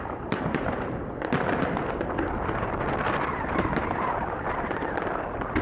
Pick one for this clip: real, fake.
real